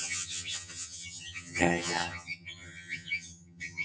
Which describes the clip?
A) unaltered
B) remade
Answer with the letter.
B